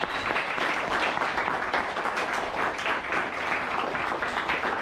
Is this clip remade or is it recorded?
recorded